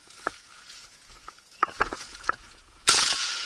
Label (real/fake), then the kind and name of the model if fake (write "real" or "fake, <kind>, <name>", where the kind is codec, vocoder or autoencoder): fake, vocoder, Vocos